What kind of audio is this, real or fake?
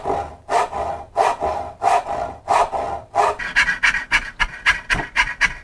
real